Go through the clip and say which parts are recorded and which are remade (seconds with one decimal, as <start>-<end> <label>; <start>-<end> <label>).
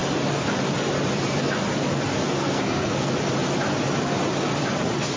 0.0-2.4 recorded; 2.4-3.1 remade; 3.1-5.2 recorded